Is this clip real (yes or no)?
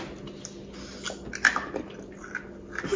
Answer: yes